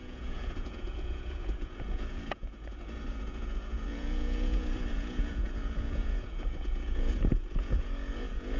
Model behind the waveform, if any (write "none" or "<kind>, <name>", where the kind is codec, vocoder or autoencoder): vocoder, Vocos